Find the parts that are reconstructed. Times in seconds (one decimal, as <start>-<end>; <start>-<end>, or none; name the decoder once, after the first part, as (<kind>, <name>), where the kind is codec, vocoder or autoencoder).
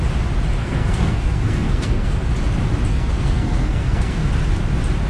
0.6-2.3 (codec, SNAC); 2.9-4.3